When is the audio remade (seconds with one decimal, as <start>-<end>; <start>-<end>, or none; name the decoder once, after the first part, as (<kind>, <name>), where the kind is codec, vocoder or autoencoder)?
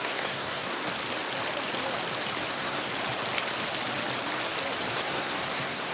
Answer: 0.0-0.8 (codec, SNAC); 2.5-2.9; 4.9-5.9